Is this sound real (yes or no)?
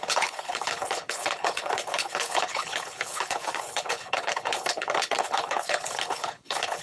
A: no